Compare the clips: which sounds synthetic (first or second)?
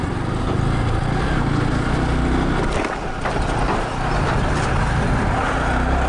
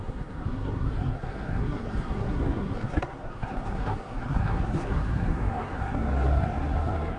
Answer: second